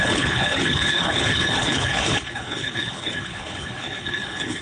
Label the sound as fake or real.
fake